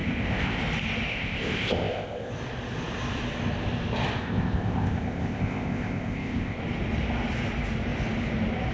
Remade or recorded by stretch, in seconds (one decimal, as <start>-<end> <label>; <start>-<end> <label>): 0.0-0.6 remade; 0.6-1.1 recorded; 1.1-2.3 remade; 2.3-4.2 recorded; 4.2-6.6 remade; 6.6-8.7 recorded